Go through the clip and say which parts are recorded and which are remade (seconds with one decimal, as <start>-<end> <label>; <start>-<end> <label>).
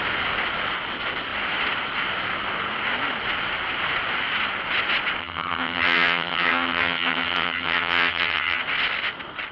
0.0-5.2 recorded; 5.2-8.6 remade; 8.6-9.5 recorded